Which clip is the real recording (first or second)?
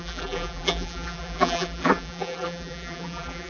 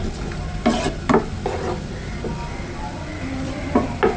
second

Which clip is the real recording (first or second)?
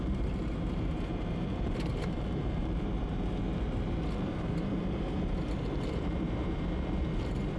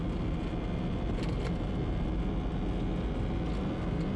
second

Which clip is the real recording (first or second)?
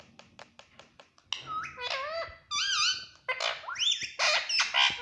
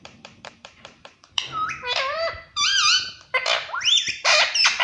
first